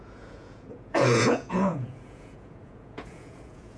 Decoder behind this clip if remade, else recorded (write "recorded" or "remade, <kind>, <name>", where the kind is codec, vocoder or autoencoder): remade, vocoder, Vocos